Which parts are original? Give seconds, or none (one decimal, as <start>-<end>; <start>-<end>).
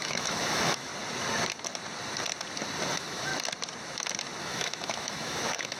0.9-2.9; 3.3-4.4